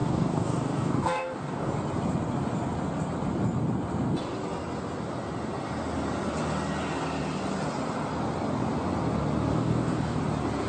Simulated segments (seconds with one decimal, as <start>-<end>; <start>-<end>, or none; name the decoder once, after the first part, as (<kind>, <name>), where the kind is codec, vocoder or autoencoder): 0.0-1.7 (codec, DAC); 9.5-10.2